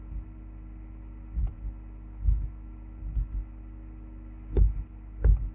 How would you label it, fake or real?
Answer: real